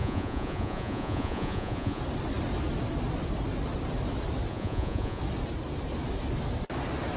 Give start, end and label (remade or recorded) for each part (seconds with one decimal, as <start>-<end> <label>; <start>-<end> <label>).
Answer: 0.0-2.0 remade; 2.0-4.5 recorded; 4.5-5.2 remade; 5.2-7.2 recorded